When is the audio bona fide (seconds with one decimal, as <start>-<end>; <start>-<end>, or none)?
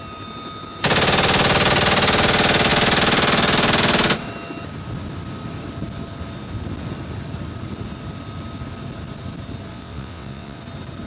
0.0-9.7; 10.6-11.1